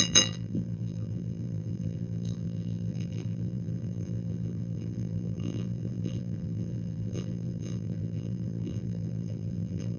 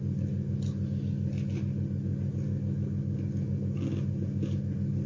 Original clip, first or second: second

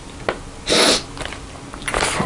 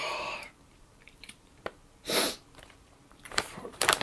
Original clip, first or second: first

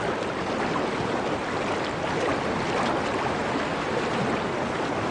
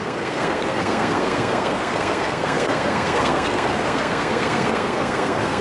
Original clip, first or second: first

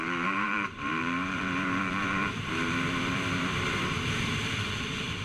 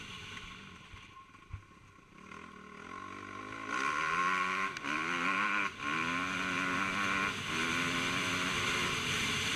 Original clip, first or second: second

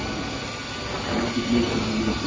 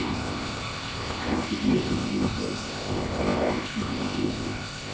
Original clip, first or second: first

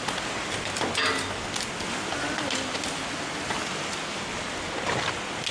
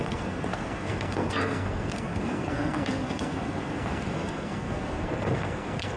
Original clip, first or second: first